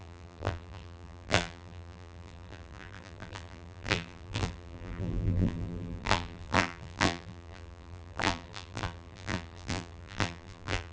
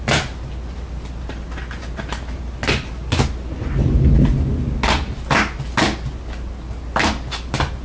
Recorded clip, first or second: second